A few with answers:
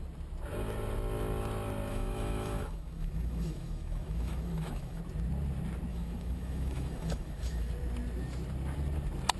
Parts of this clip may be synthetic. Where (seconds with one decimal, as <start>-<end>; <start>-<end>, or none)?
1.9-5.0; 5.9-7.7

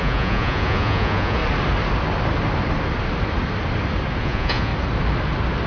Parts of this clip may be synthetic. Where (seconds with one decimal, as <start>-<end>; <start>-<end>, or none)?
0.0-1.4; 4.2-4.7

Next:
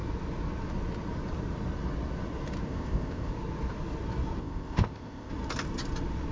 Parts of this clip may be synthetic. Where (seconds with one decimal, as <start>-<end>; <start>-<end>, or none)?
2.7-3.3; 4.4-5.3

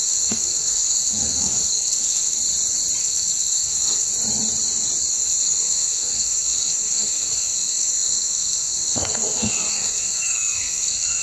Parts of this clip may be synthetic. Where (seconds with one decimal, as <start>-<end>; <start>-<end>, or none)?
0.0-2.4; 3.0-4.1; 5.1-11.2

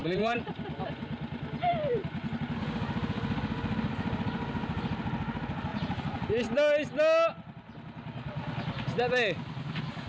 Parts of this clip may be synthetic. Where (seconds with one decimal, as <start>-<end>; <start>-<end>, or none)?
0.0-0.6; 5.7-6.4

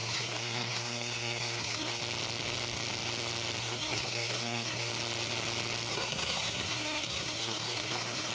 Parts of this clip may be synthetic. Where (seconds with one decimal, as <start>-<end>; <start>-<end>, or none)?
0.0-2.0; 3.6-4.9; 5.9-8.3